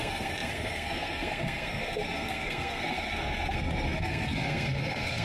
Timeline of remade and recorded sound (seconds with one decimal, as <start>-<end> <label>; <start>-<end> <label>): 0.0-5.2 remade